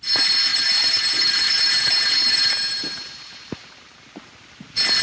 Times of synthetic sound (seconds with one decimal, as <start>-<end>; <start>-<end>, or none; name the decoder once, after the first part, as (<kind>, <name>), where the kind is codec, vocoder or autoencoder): 0.5-3.4 (vocoder, BigVGAN v2)